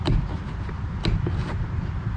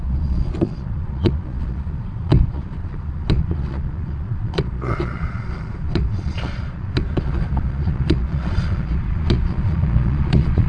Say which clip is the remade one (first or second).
second